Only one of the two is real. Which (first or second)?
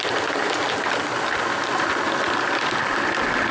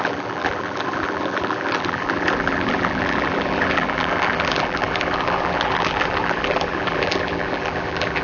first